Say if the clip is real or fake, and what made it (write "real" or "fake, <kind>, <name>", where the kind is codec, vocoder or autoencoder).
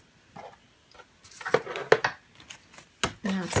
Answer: real